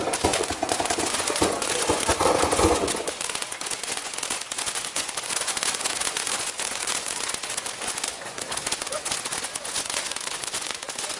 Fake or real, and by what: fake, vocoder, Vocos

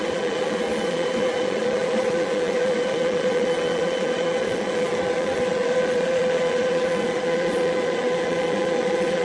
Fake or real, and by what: fake, vocoder, Vocos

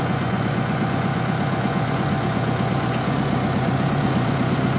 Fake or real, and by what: fake, vocoder, Vocos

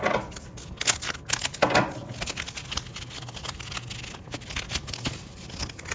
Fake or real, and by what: real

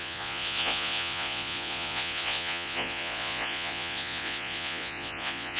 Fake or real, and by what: fake, vocoder, Vocos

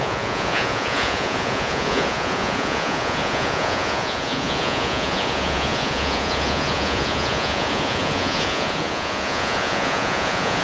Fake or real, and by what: fake, vocoder, Vocos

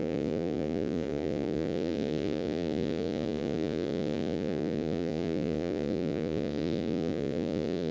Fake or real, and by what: fake, vocoder, Vocos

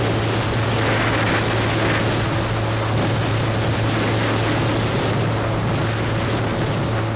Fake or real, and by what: real